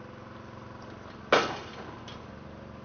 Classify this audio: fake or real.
real